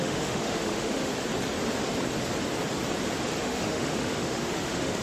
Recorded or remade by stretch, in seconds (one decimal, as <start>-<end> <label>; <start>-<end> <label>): 0.0-1.1 remade; 1.1-3.4 recorded; 3.4-5.0 remade

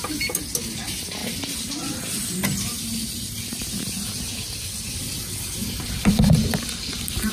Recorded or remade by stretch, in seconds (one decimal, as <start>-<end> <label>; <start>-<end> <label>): 0.0-5.6 recorded; 5.6-7.3 remade

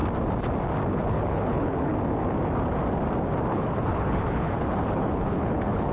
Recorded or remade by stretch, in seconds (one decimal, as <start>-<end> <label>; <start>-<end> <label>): 0.0-0.9 recorded; 0.9-1.9 remade; 1.9-3.5 recorded; 3.5-5.9 remade

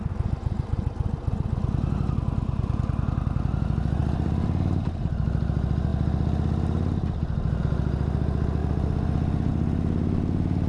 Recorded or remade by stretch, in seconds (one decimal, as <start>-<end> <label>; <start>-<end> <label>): 0.0-4.0 recorded; 4.0-5.0 remade; 5.0-10.7 recorded

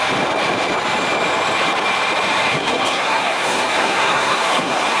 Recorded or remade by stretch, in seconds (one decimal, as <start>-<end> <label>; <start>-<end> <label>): 0.0-2.5 recorded; 2.5-5.0 remade

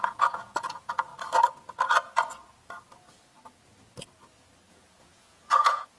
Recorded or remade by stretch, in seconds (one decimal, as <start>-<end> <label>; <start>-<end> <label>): 0.0-1.1 remade; 1.1-4.7 recorded; 4.7-6.0 remade

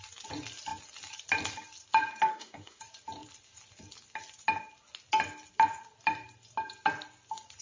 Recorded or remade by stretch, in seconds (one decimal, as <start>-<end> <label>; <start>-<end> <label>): 0.0-2.3 recorded; 2.3-2.8 remade; 2.8-7.6 recorded